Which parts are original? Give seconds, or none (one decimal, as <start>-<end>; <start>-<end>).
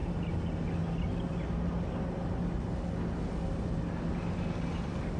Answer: 0.0-5.2